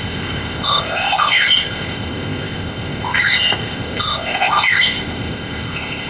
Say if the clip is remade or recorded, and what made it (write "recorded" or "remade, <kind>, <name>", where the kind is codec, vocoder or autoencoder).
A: remade, codec, ZipCodec